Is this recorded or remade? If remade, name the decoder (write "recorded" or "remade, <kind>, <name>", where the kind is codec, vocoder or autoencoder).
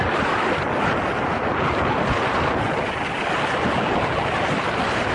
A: recorded